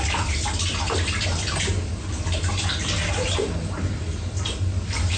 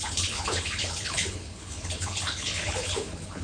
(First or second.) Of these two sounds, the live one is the first